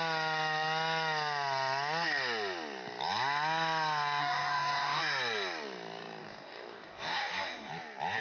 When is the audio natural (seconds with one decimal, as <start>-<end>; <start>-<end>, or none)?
0.0-4.2; 5.0-6.2; 7.7-8.2